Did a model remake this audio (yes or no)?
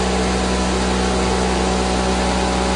no